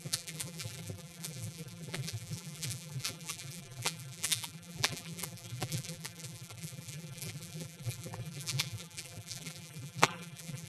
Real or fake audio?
fake